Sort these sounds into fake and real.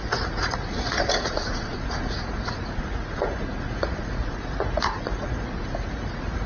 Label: fake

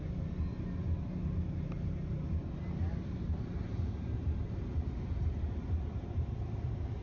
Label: real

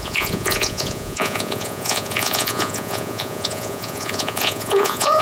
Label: fake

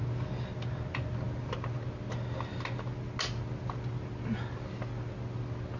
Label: real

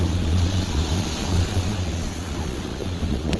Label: fake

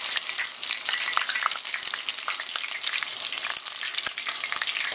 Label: real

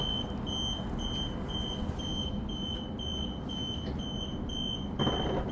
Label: real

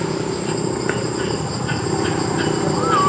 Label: real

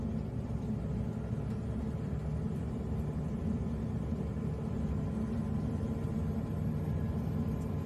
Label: real